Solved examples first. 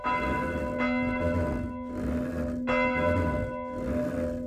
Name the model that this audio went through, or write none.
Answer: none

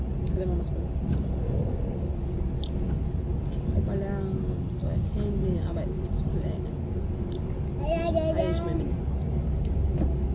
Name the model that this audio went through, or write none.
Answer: none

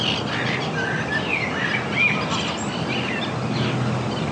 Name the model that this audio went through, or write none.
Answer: none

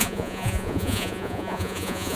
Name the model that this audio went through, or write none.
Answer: vocoder, Vocos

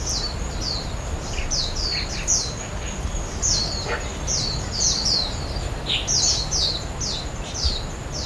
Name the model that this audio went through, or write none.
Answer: none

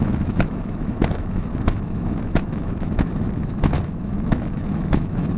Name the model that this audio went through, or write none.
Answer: autoencoder, DAC-VAE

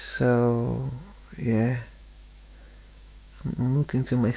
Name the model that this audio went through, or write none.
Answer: autoencoder, DAC-VAE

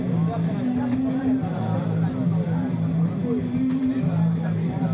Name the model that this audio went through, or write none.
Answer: none